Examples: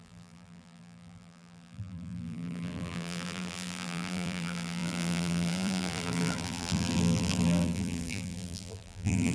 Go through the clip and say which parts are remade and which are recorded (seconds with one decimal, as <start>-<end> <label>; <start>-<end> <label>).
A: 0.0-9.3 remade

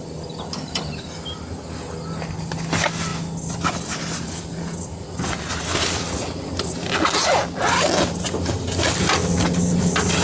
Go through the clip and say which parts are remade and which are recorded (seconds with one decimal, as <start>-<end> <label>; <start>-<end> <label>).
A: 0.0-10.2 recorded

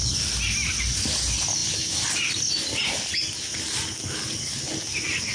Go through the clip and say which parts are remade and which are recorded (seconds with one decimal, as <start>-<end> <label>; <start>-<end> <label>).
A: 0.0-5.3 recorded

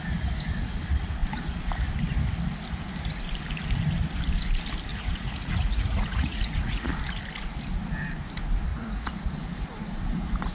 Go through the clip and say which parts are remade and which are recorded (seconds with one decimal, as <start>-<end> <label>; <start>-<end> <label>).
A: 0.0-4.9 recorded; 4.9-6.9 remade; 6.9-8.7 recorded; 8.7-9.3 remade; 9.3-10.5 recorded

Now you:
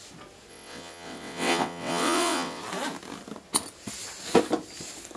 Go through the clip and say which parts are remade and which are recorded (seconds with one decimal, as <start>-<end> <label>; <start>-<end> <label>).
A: 0.0-0.5 recorded; 0.5-2.6 remade; 2.6-5.2 recorded